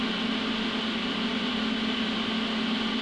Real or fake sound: real